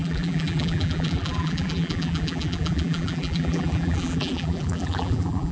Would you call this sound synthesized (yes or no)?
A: yes